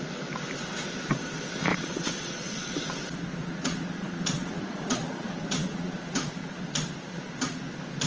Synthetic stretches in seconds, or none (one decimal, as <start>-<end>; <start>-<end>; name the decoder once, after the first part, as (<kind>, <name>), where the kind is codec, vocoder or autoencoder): 1.7-2.7 (vocoder, Vocos); 3.3-6.6; 7.0-7.6